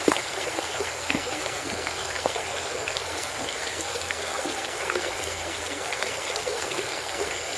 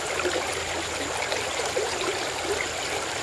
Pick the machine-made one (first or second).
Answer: first